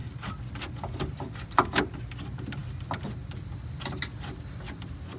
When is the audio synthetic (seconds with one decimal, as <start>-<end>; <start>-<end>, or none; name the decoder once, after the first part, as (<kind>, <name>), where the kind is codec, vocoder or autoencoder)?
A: none